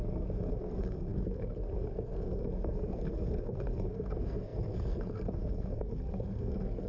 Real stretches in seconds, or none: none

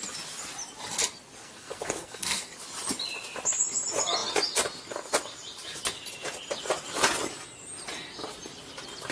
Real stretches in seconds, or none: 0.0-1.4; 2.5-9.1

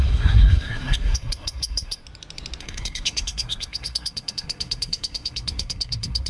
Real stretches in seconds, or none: 2.0-2.6

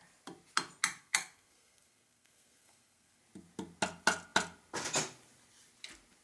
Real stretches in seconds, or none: 0.0-1.0; 3.2-6.2

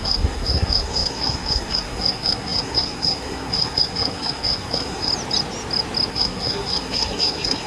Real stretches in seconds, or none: 5.1-6.1